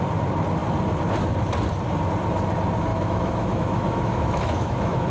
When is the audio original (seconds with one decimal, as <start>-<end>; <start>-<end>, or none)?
0.0-2.9